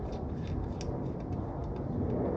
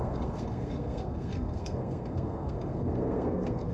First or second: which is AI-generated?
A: second